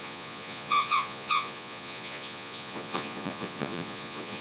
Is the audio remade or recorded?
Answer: remade